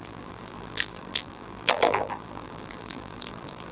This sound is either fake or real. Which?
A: fake